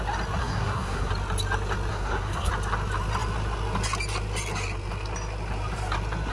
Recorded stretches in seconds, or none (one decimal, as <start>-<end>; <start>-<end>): 0.0-0.4; 1.1-1.9; 2.5-6.3